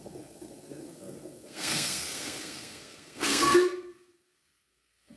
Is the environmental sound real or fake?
fake